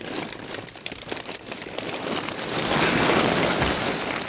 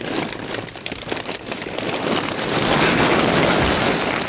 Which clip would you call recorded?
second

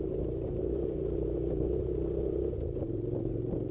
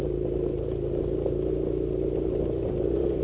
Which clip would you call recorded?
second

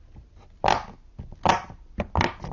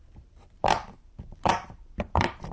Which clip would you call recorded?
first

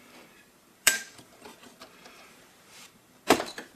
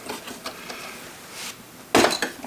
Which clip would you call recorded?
second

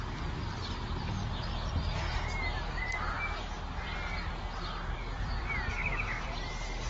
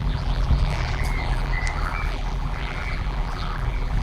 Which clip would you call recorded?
first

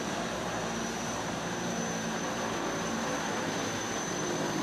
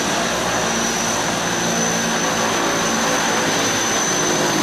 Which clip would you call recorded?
second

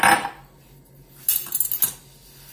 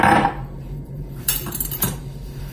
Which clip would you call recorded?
first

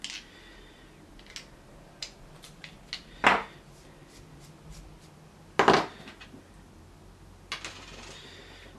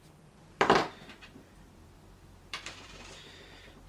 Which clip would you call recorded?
first